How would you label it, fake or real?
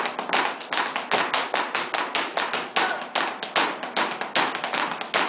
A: real